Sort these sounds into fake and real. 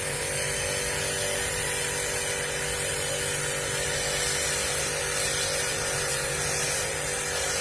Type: real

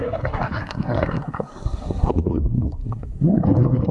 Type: fake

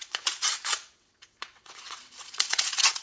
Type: fake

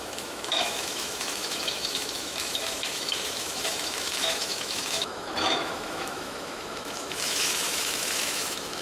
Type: fake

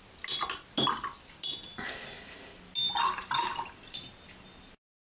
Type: real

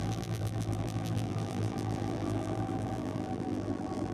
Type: fake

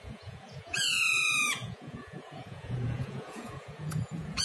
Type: fake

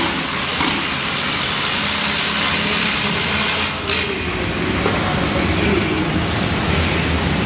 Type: real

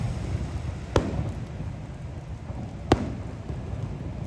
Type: real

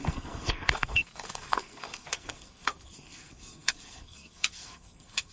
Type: fake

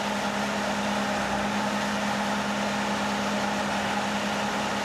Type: real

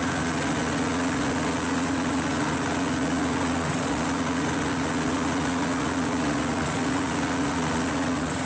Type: fake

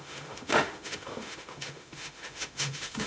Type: fake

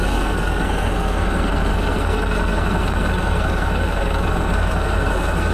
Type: fake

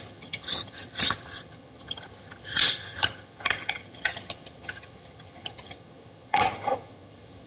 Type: fake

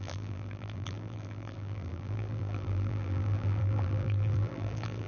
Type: fake